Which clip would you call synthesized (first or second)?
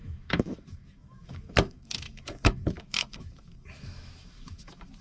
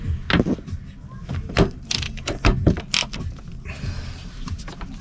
first